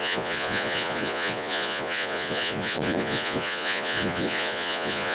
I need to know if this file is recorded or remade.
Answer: remade